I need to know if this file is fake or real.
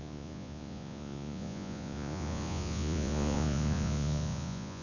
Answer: fake